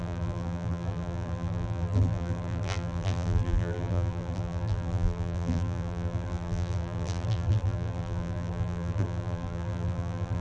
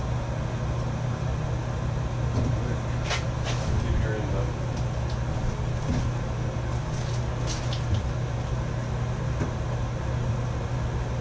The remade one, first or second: first